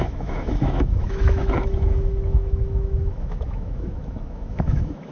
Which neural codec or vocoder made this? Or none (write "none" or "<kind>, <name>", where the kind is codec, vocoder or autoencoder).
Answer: autoencoder, DAC-VAE